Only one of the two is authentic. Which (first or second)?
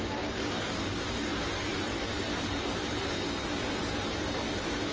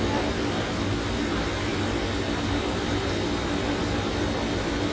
second